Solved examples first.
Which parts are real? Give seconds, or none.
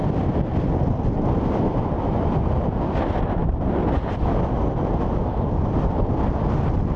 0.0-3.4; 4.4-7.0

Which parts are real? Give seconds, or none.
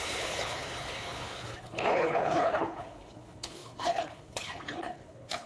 none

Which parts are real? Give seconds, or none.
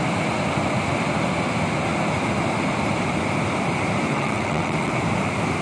0.0-4.1; 4.9-5.6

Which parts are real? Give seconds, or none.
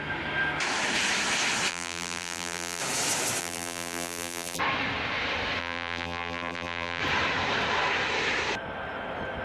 0.0-1.7; 2.8-3.4; 4.6-5.6; 7.0-9.4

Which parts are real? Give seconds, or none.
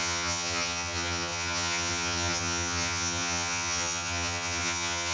none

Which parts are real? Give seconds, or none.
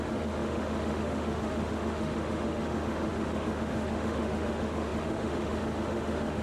none